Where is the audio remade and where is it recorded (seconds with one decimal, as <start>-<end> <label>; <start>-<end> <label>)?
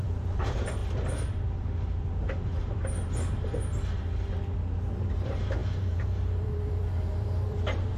0.0-0.8 remade; 0.8-5.1 recorded; 5.1-8.0 remade